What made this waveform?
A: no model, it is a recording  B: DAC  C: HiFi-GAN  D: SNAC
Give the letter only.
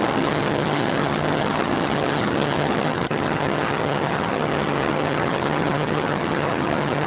C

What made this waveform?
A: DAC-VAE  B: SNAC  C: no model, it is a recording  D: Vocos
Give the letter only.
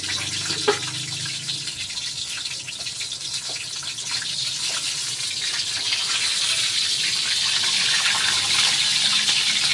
C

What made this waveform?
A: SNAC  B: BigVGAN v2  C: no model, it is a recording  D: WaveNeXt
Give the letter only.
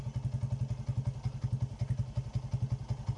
C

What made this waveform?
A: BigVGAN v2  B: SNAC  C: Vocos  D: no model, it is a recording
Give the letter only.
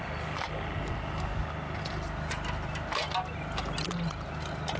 D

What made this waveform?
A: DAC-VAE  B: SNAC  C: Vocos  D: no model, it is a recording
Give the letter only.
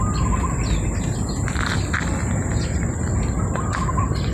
D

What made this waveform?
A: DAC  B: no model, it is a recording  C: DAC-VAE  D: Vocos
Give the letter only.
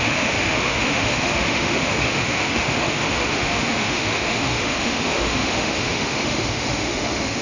C